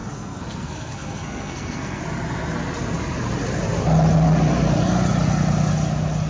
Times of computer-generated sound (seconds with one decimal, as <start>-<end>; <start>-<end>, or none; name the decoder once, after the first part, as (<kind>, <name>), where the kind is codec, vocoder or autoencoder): 0.0-2.0 (codec, SNAC)